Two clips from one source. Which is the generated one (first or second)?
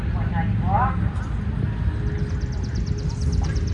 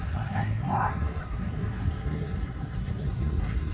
second